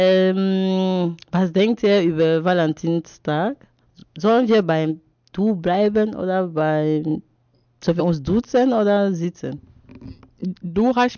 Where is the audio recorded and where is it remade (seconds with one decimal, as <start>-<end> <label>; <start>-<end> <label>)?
0.0-4.0 recorded; 4.0-4.9 remade; 4.9-11.2 recorded